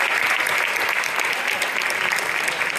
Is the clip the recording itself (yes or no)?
yes